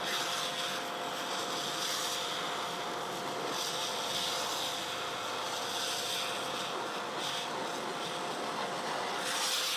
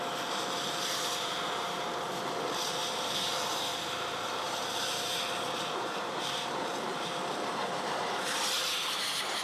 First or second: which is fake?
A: second